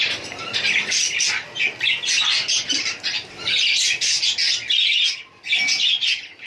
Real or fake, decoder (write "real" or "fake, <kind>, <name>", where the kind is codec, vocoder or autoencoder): real